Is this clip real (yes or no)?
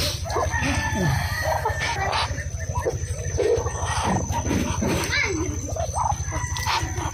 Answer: yes